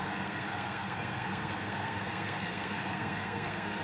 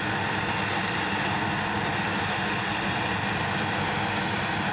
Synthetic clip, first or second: first